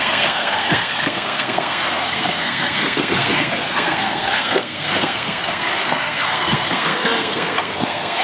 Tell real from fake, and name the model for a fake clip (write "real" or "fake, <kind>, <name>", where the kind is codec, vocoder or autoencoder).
fake, codec, SNAC